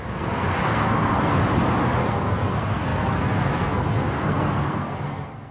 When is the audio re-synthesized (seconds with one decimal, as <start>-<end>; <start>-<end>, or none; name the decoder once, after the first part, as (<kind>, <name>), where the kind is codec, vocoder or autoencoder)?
0.0-1.4 (codec, SNAC); 2.0-5.5